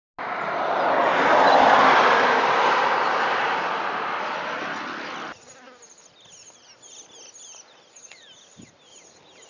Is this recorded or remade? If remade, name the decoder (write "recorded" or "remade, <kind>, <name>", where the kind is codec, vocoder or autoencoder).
recorded